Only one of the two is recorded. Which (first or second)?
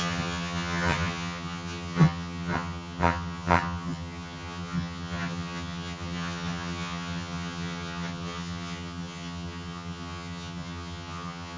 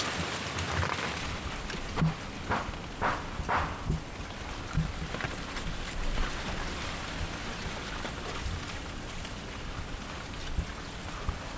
second